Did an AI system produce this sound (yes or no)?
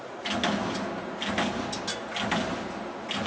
no